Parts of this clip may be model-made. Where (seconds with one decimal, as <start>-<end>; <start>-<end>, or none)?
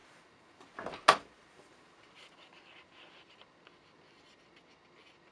none